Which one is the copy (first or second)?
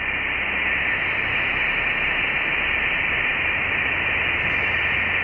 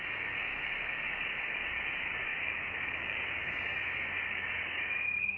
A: second